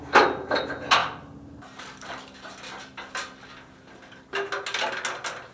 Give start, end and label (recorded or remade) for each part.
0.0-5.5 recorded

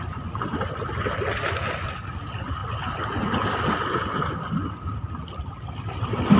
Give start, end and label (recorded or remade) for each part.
0.0-6.4 recorded

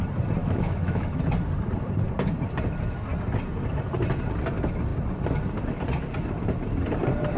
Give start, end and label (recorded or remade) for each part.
0.0-0.4 recorded; 0.4-1.2 remade; 1.2-7.4 recorded